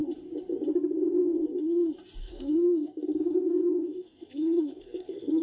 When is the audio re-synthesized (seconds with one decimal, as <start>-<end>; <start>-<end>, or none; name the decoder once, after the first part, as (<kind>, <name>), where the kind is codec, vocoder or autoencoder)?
2.2-5.4 (codec, SNAC)